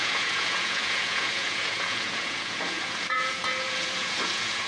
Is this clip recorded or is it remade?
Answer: remade